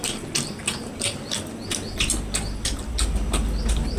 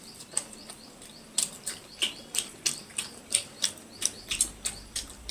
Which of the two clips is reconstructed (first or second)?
second